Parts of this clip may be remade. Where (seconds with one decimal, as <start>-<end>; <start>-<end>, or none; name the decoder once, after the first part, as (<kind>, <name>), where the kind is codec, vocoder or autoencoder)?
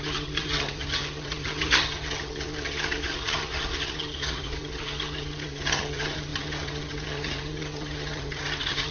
0.0-8.9 (vocoder, HiFi-GAN)